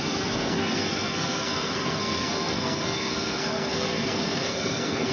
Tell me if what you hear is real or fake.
fake